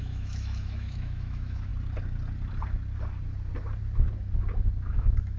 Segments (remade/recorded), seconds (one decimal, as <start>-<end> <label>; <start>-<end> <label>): 0.0-1.7 remade; 1.7-4.9 recorded; 4.9-5.4 remade